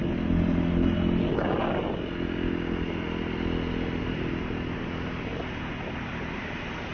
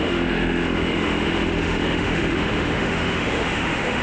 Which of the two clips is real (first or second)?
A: first